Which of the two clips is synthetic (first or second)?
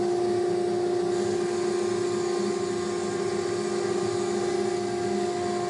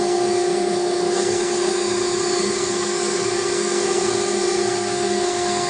second